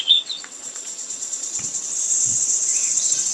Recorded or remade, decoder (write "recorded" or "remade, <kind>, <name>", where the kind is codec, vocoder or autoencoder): remade, vocoder, WaveNeXt